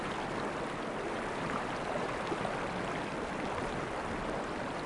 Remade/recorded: recorded